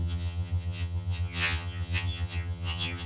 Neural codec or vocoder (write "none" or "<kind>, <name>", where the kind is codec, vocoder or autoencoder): vocoder, HiFi-GAN